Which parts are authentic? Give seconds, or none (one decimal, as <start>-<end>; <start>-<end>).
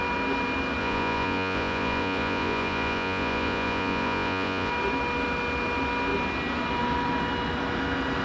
0.0-0.8; 4.7-8.2